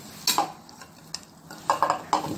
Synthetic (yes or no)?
no